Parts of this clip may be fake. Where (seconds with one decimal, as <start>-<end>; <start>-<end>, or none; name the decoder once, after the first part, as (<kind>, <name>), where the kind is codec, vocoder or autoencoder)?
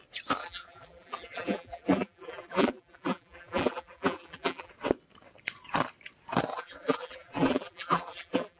0.4-4.7 (vocoder, BigVGAN v2); 6.5-8.6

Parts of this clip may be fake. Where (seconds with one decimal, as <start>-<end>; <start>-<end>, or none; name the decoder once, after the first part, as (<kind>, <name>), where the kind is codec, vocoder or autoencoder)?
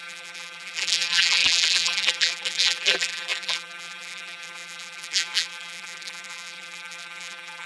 0.0-7.7 (vocoder, BigVGAN v2)